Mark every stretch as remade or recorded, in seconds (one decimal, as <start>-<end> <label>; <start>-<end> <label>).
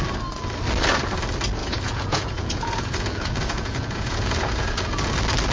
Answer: 0.0-1.6 recorded; 1.6-4.9 remade; 4.9-5.5 recorded